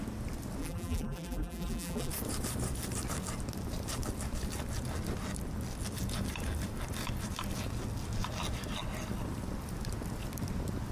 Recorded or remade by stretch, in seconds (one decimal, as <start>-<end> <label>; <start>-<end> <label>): 0.0-0.6 recorded; 0.6-2.1 remade; 2.1-10.9 recorded